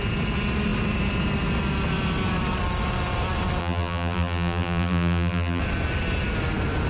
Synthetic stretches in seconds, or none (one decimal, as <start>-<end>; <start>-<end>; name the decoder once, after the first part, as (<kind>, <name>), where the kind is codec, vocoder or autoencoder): 3.6-5.6 (vocoder, BigVGAN v2)